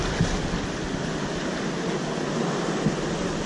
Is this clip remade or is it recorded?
recorded